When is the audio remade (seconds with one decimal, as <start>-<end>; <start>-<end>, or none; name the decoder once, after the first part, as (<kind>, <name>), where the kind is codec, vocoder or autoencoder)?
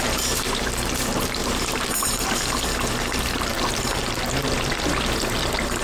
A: 1.4-2.3 (vocoder, BigVGAN v2); 3.5-4.0